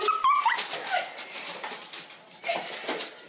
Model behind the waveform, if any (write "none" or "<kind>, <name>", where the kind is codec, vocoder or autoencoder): none